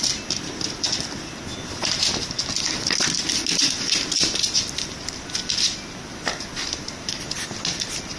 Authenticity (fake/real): real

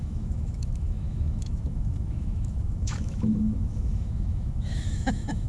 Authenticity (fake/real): fake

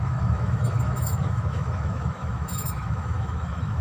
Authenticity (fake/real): fake